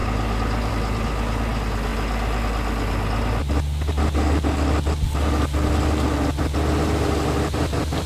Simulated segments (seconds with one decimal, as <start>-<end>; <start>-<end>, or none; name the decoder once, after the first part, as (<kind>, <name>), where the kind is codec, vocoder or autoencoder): none